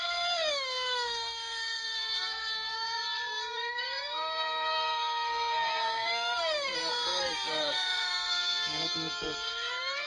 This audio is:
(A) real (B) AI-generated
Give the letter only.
B